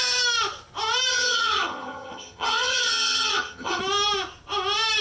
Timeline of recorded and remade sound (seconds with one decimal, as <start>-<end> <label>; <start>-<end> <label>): 0.0-1.1 recorded; 1.1-3.8 remade; 3.8-5.0 recorded